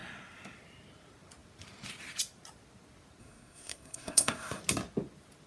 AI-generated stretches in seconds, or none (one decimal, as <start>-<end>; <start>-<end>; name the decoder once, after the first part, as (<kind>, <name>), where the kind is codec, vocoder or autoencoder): 3.2-4.6 (codec, SNAC)